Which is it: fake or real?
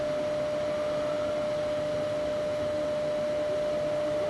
real